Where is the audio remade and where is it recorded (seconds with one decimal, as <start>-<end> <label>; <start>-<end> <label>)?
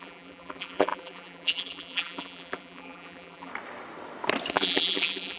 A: 0.0-3.5 remade; 3.5-4.5 recorded; 4.5-5.4 remade